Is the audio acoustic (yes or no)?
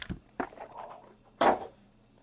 no